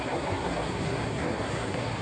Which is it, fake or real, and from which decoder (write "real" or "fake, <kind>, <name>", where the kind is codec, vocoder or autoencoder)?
fake, codec, SNAC